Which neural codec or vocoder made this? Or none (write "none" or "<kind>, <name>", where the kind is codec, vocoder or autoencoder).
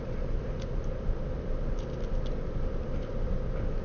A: none